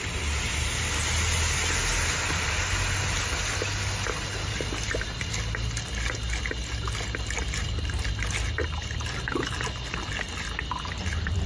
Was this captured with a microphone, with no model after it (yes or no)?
yes